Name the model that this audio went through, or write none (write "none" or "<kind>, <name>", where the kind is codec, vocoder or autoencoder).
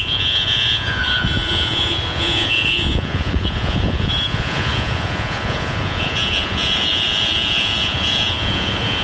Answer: vocoder, Vocos